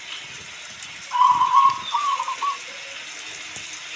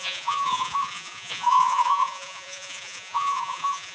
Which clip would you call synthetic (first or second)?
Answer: second